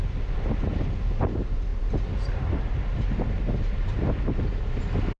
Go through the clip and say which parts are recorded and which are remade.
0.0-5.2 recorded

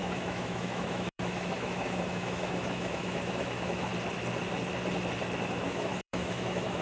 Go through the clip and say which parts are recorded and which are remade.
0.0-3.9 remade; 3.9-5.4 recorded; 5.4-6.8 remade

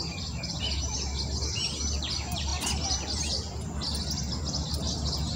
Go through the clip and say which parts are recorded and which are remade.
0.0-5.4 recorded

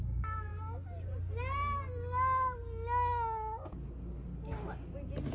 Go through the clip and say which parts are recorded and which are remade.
0.0-5.3 recorded

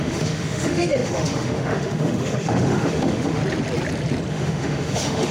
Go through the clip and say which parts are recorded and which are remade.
0.0-3.4 remade; 3.4-4.3 recorded; 4.3-5.3 remade

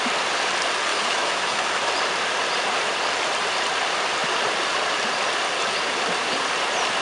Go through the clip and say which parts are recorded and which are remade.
0.0-0.9 recorded; 0.9-1.9 remade; 1.9-7.0 recorded

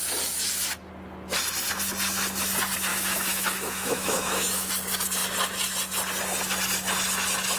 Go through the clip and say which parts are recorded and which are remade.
0.0-2.9 recorded; 2.9-4.7 remade; 4.7-7.6 recorded

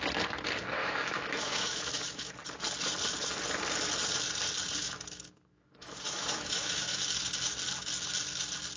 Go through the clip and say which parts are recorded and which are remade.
0.0-0.8 recorded; 0.8-2.3 remade; 2.3-4.8 recorded; 4.8-7.0 remade; 7.0-8.8 recorded